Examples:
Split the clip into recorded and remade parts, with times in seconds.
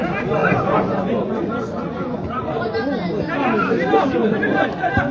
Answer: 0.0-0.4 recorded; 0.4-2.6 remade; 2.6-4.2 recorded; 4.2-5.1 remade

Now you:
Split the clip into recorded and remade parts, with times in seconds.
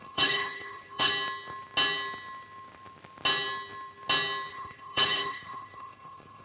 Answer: 0.0-1.1 remade; 1.1-4.5 recorded; 4.5-6.4 remade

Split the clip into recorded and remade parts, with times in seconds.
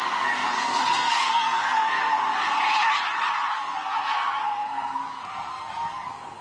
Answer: 0.0-2.2 remade; 2.2-3.5 recorded; 3.5-6.4 remade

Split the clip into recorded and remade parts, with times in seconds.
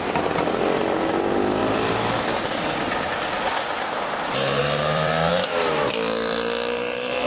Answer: 0.0-1.6 recorded; 1.6-2.6 remade; 2.6-4.6 recorded; 4.6-5.3 remade; 5.3-7.3 recorded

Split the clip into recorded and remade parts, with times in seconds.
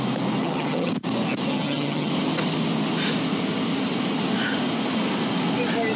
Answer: 0.0-0.4 recorded; 0.4-0.9 remade; 0.9-1.5 recorded; 1.5-2.1 remade; 2.1-6.0 recorded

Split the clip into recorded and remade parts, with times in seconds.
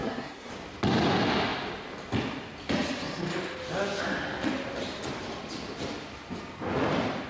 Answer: 0.0-0.5 remade; 0.5-7.3 recorded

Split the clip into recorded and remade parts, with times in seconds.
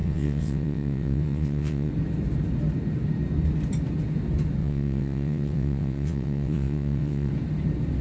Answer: 0.0-1.9 remade; 1.9-4.6 recorded; 4.6-7.3 remade; 7.3-8.0 recorded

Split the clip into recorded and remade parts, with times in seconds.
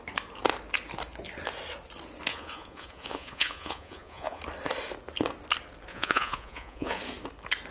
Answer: 0.0-2.3 recorded; 2.3-4.4 remade; 4.4-5.9 recorded; 5.9-7.0 remade; 7.0-7.7 recorded